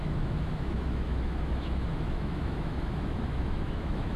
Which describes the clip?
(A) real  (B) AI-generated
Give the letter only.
B